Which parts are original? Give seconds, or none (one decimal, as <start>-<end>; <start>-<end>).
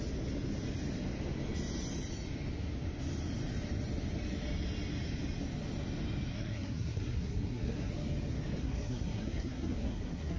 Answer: 0.0-6.3; 7.9-8.6